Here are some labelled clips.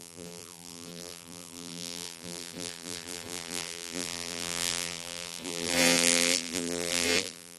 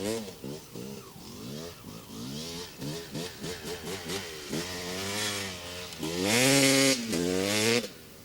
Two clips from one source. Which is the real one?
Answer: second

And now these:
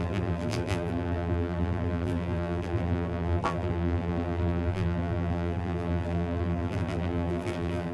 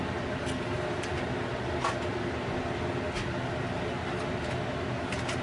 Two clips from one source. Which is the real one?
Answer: second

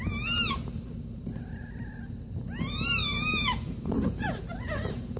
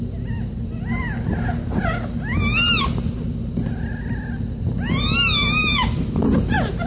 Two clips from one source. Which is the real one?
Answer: second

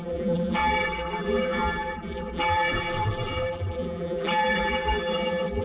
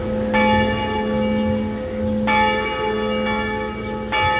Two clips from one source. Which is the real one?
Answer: second